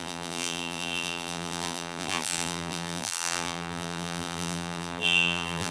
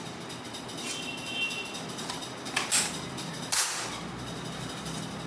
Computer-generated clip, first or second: first